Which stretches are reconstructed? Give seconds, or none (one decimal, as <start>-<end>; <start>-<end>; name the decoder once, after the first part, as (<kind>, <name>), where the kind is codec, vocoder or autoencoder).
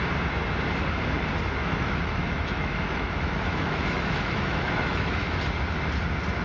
1.6-5.4 (autoencoder, DAC-VAE)